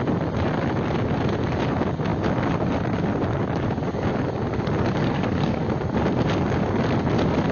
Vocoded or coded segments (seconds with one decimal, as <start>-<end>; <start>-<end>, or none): 5.0-5.6